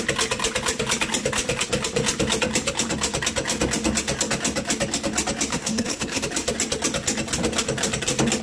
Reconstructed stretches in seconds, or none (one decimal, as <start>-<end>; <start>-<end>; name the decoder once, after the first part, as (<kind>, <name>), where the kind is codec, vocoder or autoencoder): 5.5-6.2 (codec, SNAC)